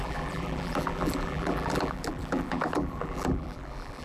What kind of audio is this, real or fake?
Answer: fake